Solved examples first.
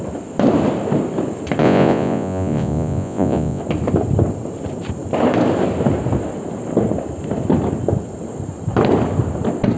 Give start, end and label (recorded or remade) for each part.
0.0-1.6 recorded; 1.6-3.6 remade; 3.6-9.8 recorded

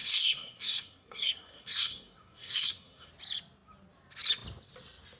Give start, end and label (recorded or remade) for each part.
0.0-3.1 remade; 3.1-5.2 recorded